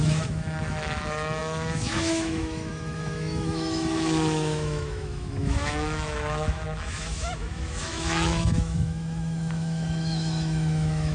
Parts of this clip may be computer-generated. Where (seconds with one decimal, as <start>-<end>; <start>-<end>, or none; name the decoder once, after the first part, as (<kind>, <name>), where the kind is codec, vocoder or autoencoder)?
0.0-11.1 (autoencoder, DAC-VAE)